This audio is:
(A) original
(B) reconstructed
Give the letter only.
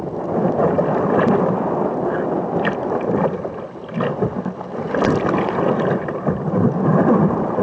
A